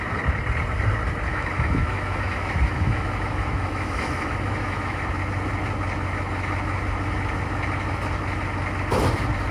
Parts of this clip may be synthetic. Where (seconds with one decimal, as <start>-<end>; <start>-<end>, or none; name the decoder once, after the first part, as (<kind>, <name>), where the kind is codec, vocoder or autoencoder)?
1.3-5.0 (autoencoder, DAC-VAE)